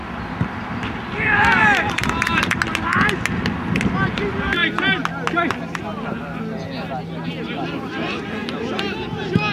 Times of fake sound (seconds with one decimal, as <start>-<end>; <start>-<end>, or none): 0.0-2.6